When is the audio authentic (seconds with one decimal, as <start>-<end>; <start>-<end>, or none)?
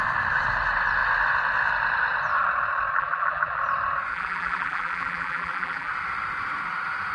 0.0-2.9; 3.6-4.1; 5.9-7.1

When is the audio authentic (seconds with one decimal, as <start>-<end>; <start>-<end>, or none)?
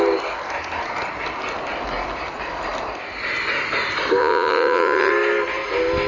0.0-4.2; 5.1-6.1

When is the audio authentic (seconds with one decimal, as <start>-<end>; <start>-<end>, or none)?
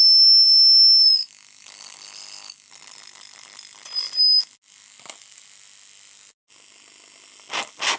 0.0-8.0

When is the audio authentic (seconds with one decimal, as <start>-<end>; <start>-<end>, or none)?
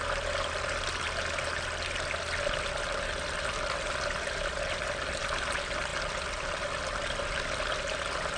0.0-8.4